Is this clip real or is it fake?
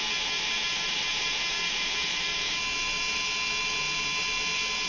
real